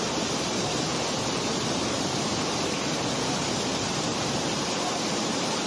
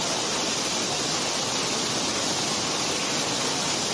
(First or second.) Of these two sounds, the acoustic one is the second